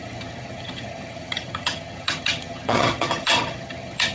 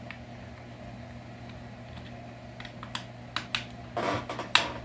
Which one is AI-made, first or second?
first